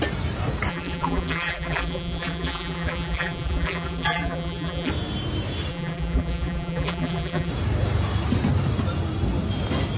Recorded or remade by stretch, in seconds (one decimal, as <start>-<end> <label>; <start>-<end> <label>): 0.0-0.7 recorded; 0.7-4.9 remade; 4.9-5.7 recorded; 5.7-7.5 remade; 7.5-10.0 recorded